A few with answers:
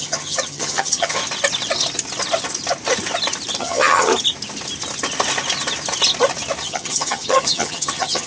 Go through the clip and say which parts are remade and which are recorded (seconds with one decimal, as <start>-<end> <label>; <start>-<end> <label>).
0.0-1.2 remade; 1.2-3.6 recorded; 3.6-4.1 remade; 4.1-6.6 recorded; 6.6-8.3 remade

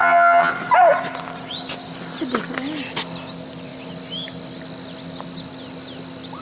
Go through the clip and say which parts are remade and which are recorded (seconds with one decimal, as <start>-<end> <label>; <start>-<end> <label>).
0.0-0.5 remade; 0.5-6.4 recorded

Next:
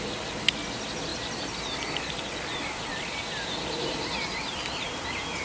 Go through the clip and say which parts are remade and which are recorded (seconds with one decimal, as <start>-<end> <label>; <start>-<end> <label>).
0.0-5.4 recorded

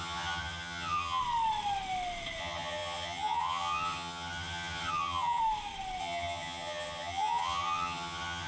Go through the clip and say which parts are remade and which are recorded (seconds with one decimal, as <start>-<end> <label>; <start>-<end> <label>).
0.0-1.2 remade; 1.2-2.4 recorded; 2.4-5.4 remade; 5.4-6.0 recorded; 6.0-8.5 remade

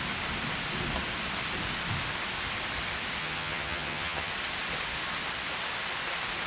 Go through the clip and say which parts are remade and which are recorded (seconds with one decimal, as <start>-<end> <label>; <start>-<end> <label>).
0.0-3.2 recorded; 3.2-4.3 remade; 4.3-6.5 recorded

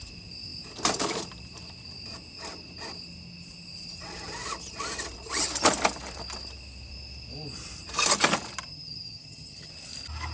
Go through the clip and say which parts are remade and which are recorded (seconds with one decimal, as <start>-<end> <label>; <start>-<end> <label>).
0.0-8.7 recorded; 8.7-9.7 remade; 9.7-10.3 recorded

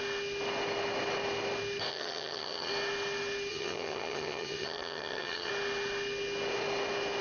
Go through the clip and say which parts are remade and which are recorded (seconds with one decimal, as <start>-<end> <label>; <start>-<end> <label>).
0.0-1.9 recorded; 1.9-2.7 remade; 2.7-3.5 recorded; 3.5-5.5 remade; 5.5-7.2 recorded